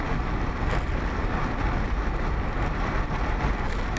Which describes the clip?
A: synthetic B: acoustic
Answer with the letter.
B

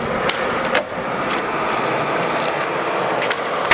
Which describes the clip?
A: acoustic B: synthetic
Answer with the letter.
A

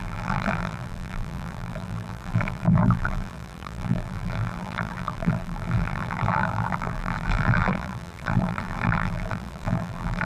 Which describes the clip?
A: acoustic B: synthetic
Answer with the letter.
B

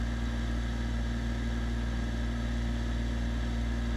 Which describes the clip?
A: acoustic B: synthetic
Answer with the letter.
A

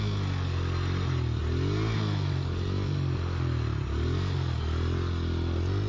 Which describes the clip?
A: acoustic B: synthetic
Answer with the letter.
A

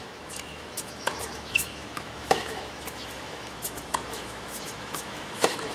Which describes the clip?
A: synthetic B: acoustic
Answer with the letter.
A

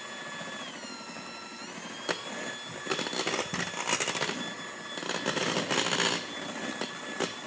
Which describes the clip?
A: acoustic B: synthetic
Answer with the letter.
A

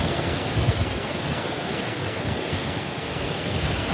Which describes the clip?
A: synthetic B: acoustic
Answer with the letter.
A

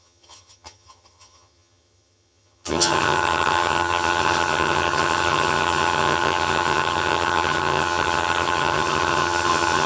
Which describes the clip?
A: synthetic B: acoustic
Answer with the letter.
A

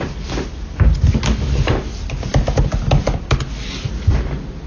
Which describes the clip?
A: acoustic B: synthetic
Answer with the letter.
A